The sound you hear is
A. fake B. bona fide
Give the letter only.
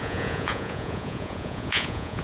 A